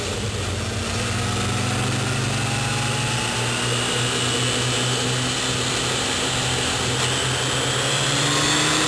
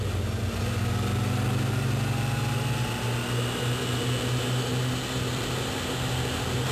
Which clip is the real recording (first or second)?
first